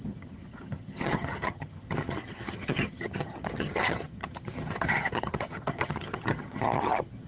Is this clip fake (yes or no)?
yes